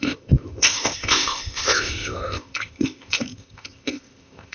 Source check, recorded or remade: remade